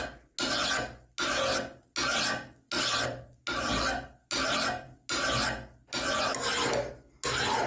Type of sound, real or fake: real